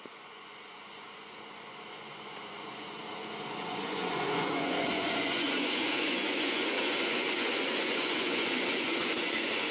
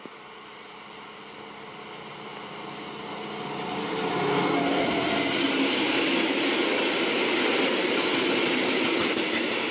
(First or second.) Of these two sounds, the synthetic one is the first